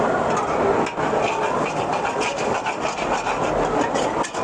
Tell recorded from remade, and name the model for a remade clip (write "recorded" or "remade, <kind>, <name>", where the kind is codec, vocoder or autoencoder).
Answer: recorded